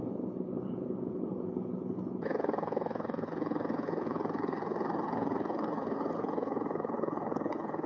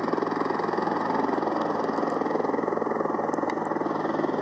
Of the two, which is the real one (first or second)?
second